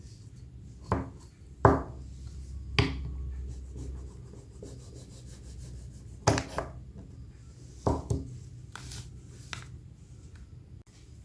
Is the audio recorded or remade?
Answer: recorded